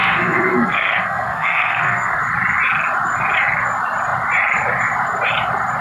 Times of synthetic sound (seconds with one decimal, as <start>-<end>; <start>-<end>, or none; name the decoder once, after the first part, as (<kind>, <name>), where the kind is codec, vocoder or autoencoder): 0.0-2.2 (codec, SNAC)